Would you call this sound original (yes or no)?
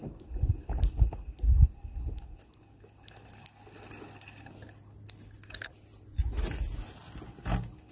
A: yes